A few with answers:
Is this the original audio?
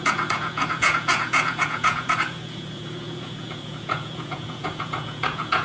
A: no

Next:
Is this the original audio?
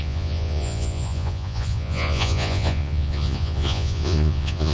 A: no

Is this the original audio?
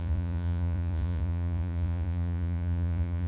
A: no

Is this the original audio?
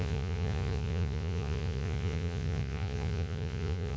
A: no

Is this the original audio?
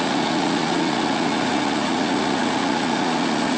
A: no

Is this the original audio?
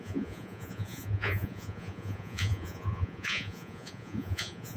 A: no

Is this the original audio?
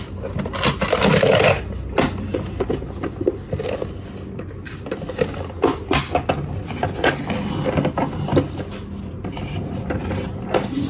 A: yes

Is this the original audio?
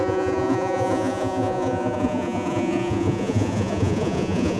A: no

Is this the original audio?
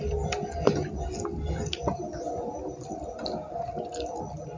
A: yes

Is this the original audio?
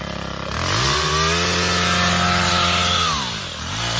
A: yes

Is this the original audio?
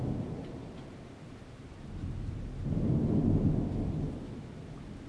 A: yes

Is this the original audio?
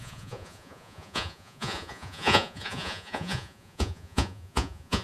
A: no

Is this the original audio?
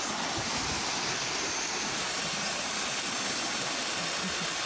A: yes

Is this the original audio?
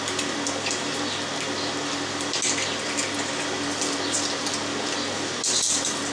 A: yes